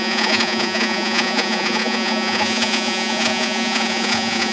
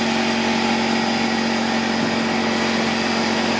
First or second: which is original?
second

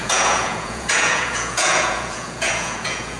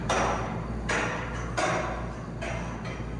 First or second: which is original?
second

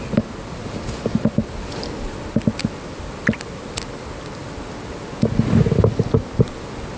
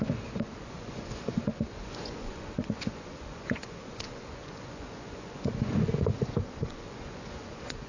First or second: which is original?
first